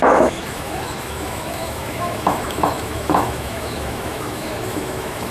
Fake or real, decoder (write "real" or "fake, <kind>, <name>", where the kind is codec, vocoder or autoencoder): fake, autoencoder, DAC-VAE